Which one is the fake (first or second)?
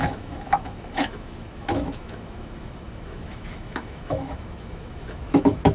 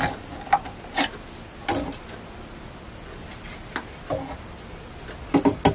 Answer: first